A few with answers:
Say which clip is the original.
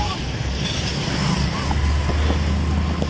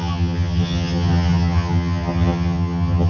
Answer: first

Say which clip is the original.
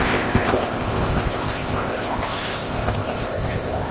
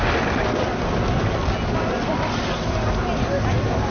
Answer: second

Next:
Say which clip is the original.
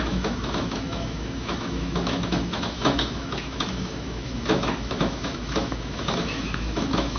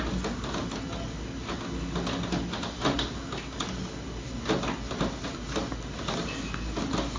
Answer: second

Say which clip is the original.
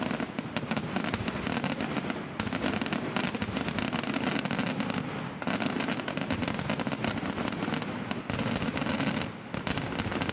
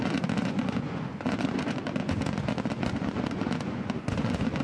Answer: first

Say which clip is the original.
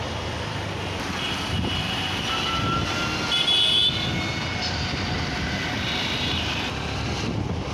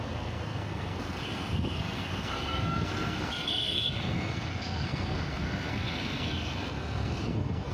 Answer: first